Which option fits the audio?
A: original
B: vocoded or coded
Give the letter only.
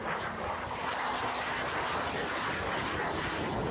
A